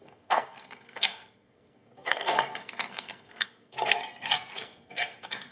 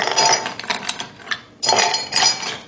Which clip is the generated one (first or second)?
first